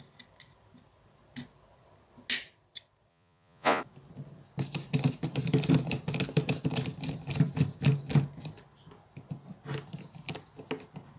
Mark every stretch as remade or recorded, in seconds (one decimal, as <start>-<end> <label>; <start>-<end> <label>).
0.0-3.1 recorded; 3.1-3.8 remade; 3.8-11.2 recorded